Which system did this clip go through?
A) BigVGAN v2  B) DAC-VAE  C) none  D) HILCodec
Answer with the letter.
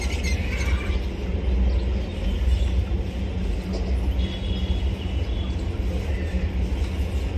C